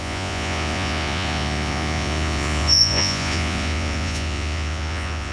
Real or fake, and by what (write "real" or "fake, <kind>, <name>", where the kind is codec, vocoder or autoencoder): fake, vocoder, Vocos